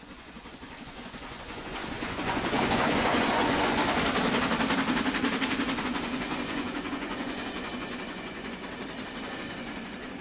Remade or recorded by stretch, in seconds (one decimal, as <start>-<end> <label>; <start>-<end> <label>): 0.0-3.8 remade; 3.8-5.8 recorded; 5.8-8.6 remade; 8.6-9.2 recorded; 9.2-10.2 remade